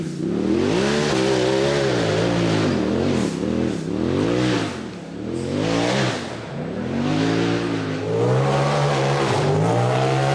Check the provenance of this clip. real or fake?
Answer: real